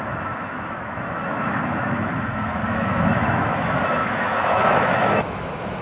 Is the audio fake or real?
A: fake